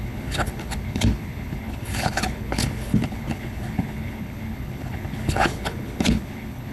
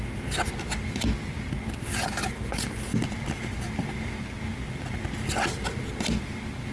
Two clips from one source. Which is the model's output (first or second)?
first